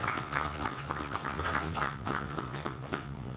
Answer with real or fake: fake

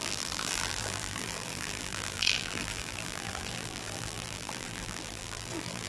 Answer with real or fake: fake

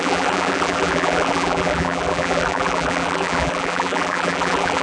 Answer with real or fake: fake